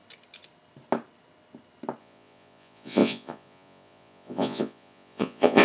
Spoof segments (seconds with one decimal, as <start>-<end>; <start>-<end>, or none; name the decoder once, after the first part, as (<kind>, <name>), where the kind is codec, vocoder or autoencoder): 2.0-5.6 (vocoder, Vocos)